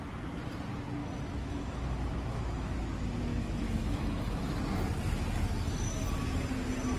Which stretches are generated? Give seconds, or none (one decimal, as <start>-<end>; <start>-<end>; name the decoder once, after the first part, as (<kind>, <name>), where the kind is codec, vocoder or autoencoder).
1.0-2.8 (autoencoder, DAC-VAE); 3.3-4.4